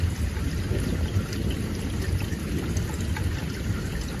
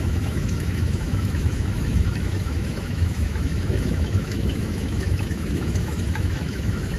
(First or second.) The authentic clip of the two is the first